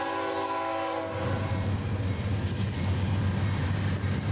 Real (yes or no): yes